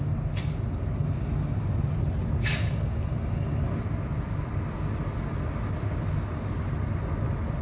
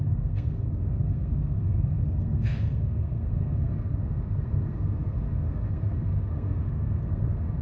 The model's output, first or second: second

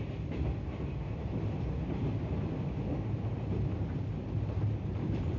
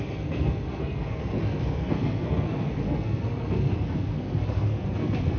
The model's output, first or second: second